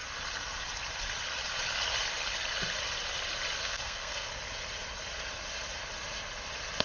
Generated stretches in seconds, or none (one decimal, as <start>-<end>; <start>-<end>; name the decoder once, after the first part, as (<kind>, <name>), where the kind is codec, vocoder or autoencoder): 3.6-4.3 (codec, SNAC)